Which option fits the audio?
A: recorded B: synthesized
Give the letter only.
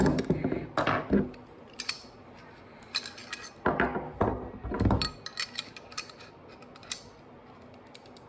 A